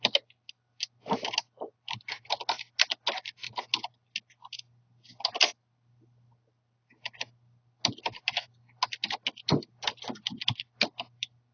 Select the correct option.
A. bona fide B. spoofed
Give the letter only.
A